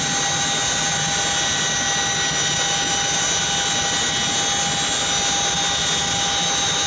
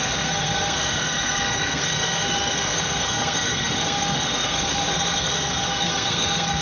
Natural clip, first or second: first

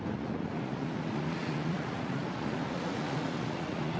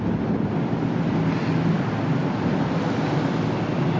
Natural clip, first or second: second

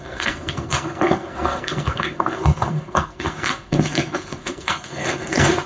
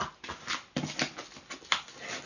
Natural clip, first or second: second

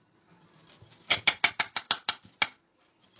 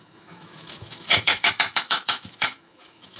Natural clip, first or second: first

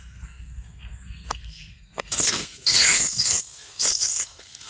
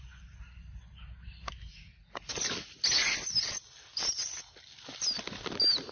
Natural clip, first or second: second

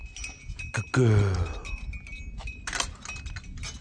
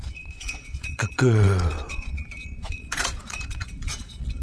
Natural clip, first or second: first